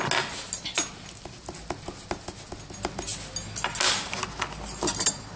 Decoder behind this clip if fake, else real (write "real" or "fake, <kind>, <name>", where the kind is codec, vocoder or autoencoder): real